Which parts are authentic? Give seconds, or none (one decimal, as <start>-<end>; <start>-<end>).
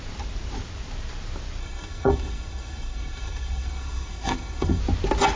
0.0-1.6; 4.8-5.4